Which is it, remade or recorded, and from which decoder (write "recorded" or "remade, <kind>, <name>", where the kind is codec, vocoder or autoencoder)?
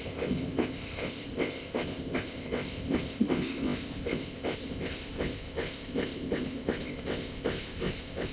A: remade, codec, ZipCodec